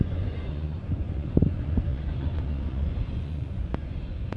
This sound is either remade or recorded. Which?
remade